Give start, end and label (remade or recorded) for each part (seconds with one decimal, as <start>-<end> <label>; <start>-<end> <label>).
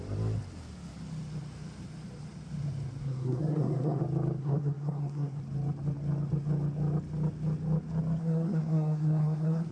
0.0-3.0 recorded; 3.0-4.0 remade; 4.0-4.4 recorded; 4.4-5.4 remade; 5.4-8.2 recorded; 8.2-9.7 remade